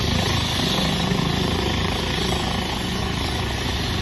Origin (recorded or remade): remade